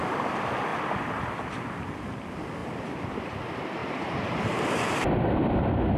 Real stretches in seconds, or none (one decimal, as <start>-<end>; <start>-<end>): 0.0-2.6; 3.2-3.8; 5.1-6.0